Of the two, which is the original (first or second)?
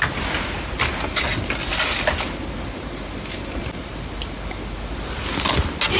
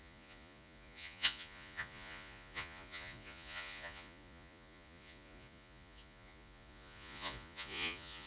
first